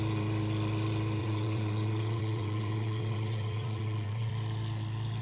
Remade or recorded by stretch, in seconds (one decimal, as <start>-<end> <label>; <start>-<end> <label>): 0.0-1.2 recorded; 1.2-4.3 remade; 4.3-5.2 recorded